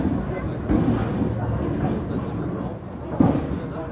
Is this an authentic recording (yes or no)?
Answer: yes